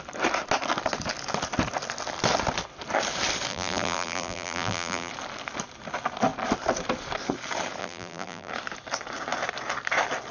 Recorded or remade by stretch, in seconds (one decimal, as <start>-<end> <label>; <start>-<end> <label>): 0.0-3.5 recorded; 3.5-5.1 remade; 5.1-7.8 recorded; 7.8-8.5 remade; 8.5-10.3 recorded